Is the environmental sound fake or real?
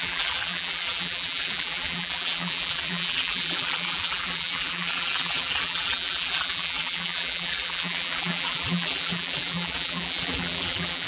fake